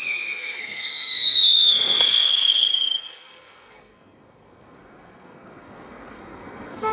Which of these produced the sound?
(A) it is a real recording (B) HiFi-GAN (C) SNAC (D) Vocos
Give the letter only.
C